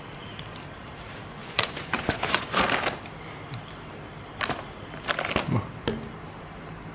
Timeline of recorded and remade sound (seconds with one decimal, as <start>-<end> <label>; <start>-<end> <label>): 0.0-1.4 recorded; 1.4-2.6 remade; 2.6-6.9 recorded